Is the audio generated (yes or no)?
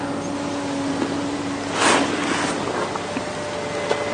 no